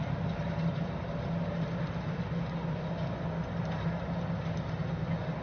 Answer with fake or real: real